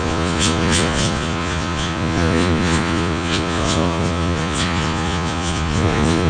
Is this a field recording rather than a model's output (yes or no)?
no